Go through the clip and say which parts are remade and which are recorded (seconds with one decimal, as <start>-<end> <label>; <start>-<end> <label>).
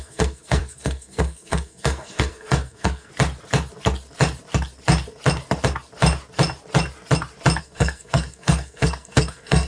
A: 0.0-3.1 remade; 3.1-7.6 recorded; 7.6-9.7 remade